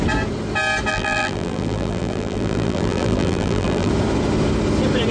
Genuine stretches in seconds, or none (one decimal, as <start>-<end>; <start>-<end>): 0.0-0.9; 3.9-5.1